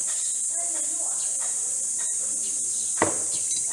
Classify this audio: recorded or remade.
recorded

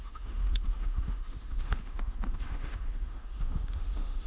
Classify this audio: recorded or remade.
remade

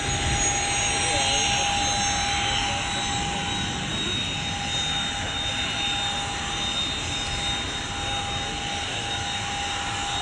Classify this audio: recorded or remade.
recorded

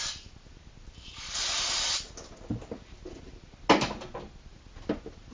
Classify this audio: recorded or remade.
recorded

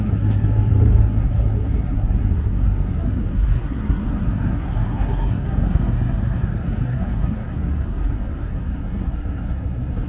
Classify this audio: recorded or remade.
remade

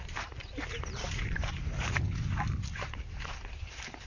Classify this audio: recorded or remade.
remade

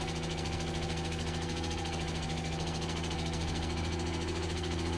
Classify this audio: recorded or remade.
remade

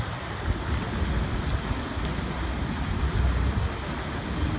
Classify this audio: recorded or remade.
recorded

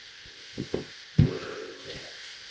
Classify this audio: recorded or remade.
remade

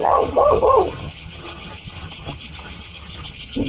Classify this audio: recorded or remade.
remade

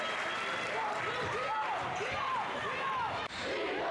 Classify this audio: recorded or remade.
recorded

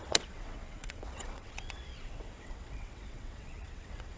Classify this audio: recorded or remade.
remade